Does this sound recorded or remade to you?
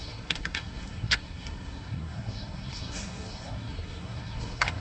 remade